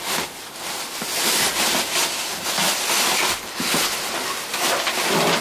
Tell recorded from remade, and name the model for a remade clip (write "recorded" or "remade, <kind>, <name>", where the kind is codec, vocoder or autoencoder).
recorded